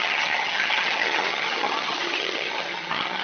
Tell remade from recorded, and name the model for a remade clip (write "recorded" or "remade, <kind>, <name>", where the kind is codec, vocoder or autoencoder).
remade, vocoder, HiFi-GAN